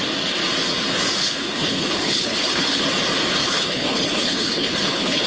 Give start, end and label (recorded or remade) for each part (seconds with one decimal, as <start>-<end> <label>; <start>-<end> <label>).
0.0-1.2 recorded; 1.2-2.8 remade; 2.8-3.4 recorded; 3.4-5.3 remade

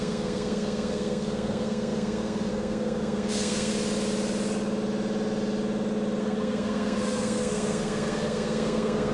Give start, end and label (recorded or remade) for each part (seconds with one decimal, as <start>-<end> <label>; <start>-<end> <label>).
0.0-3.7 remade; 3.7-6.2 recorded; 6.2-9.1 remade

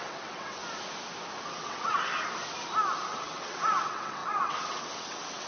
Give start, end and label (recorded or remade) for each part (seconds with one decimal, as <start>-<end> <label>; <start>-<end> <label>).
0.0-0.6 remade; 0.6-1.5 recorded; 1.5-2.1 remade; 2.1-3.1 recorded; 3.1-5.5 remade

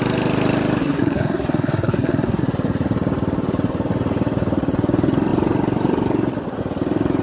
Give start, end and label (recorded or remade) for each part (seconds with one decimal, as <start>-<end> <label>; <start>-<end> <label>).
0.0-0.8 recorded; 0.8-2.4 remade; 2.4-7.2 recorded

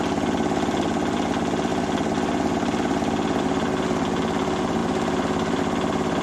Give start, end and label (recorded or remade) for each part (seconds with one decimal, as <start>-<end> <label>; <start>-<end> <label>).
0.0-6.2 recorded

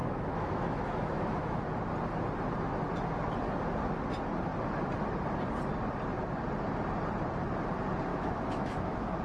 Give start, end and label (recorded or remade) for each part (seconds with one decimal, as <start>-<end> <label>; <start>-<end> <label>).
0.0-1.6 remade; 1.6-8.1 recorded; 8.1-9.2 remade

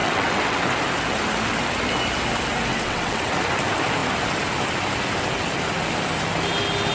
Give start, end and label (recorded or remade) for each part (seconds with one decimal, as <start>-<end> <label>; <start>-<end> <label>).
0.0-0.6 remade; 0.6-2.7 recorded; 2.7-3.3 remade; 3.3-6.9 recorded